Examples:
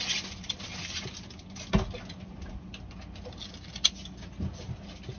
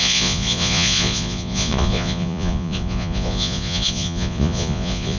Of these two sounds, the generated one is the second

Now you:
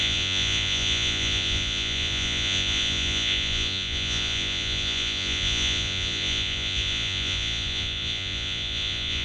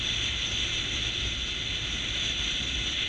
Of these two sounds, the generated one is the first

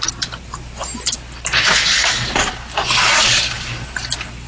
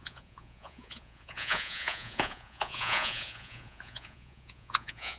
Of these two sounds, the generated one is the second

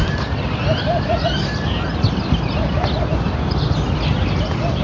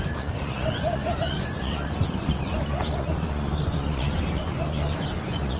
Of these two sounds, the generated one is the second